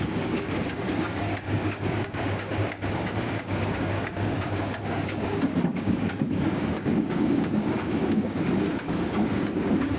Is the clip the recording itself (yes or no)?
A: no